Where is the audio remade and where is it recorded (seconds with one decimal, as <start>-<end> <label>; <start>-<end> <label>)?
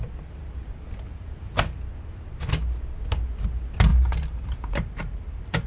0.0-3.9 recorded; 3.9-5.7 remade